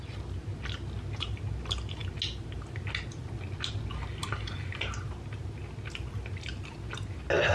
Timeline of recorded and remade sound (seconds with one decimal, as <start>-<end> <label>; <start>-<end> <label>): 0.0-7.5 recorded